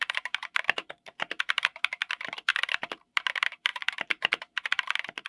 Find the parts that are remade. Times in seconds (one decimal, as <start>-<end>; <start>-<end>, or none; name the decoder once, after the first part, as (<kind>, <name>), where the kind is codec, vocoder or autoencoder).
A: 0.0-2.5 (vocoder, BigVGAN v2); 3.1-5.3

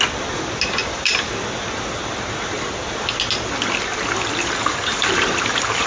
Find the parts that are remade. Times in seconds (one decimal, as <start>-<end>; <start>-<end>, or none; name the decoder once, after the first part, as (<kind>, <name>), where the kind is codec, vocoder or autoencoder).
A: none

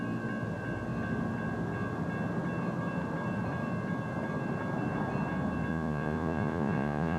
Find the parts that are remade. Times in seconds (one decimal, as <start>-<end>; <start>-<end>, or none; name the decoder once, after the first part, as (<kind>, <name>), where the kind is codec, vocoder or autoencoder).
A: 5.7-7.2 (vocoder, Vocos)

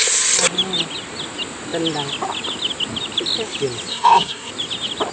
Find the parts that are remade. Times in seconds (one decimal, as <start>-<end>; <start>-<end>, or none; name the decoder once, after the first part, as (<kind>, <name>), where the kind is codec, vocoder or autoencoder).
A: 3.9-4.5 (codec, SNAC)

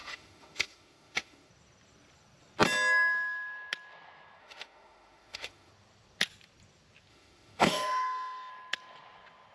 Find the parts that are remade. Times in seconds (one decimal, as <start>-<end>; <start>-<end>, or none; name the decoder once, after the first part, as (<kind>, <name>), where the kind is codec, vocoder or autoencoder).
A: 0.0-1.5 (autoencoder, DAC-VAE); 4.4-5.7; 7.1-8.5

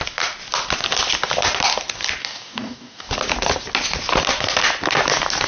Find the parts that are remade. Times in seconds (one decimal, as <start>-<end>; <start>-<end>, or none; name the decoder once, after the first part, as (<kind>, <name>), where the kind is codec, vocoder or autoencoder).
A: 2.2-3.1 (codec, DAC)